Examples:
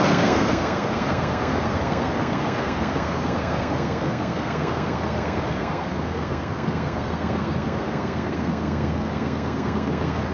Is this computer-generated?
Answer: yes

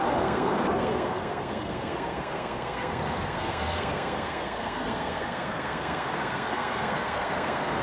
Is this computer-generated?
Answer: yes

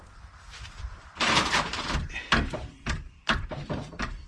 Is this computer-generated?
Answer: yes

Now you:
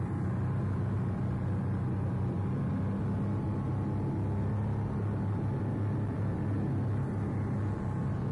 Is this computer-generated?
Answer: no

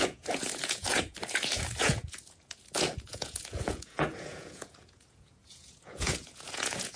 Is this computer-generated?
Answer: yes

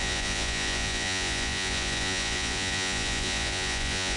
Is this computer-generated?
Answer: yes